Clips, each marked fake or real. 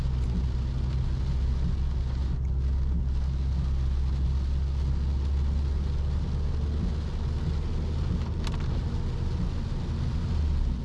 real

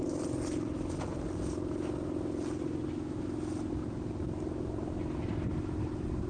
real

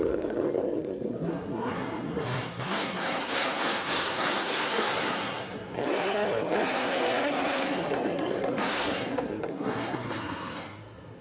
fake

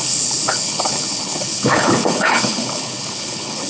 fake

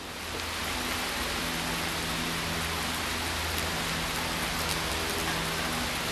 real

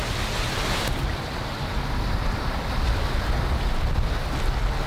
real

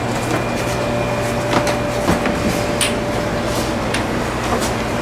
real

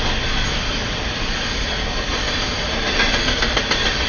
fake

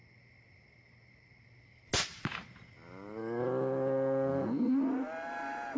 real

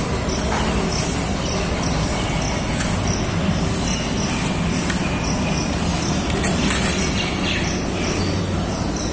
real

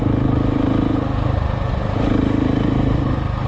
real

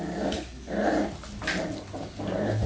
real